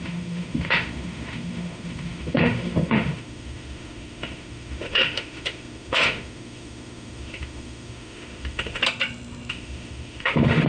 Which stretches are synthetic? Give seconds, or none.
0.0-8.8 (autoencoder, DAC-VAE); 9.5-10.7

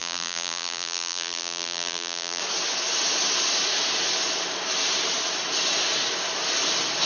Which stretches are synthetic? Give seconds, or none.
0.0-2.4 (vocoder, BigVGAN v2)

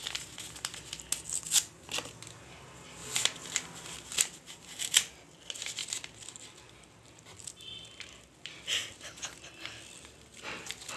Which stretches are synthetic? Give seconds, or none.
none

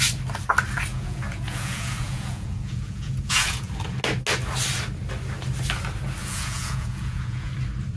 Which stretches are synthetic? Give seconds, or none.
0.9-3.7 (vocoder, Vocos); 6.2-7.5